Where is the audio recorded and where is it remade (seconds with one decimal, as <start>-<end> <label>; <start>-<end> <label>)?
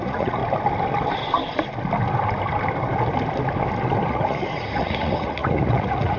0.0-0.4 remade; 0.4-4.1 recorded; 4.1-6.2 remade